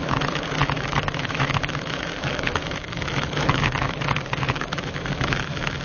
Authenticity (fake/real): fake